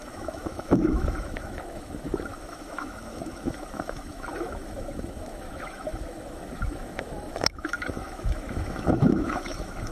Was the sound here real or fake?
fake